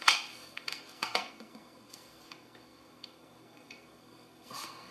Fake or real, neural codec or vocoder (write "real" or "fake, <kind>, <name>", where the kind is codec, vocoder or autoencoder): fake, codec, SNAC